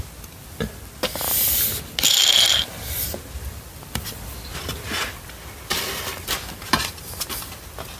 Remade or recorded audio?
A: recorded